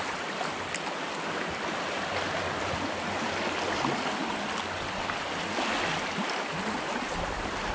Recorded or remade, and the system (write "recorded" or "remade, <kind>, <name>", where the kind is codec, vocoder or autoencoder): recorded